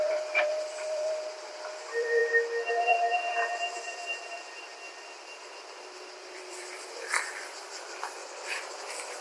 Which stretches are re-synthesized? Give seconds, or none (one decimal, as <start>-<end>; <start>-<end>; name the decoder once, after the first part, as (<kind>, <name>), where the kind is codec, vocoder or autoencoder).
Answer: 0.0-2.2 (vocoder, BigVGAN v2); 2.7-8.2